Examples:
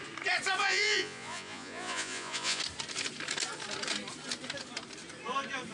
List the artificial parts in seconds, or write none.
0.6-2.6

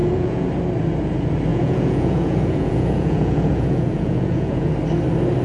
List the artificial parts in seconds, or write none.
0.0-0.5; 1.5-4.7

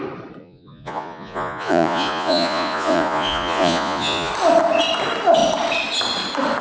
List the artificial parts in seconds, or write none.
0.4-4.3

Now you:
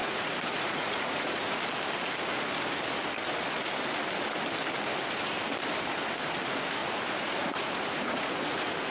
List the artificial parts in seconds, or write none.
0.0-1.6; 6.8-8.5